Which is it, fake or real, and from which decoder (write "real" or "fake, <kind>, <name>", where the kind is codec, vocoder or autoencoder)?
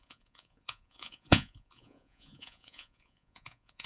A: fake, vocoder, Vocos